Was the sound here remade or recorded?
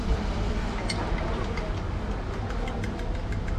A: recorded